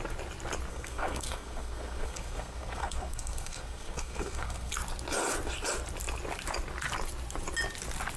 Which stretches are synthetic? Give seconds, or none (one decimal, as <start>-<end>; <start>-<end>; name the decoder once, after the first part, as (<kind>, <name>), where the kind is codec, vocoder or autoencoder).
0.7-4.7 (codec, SNAC)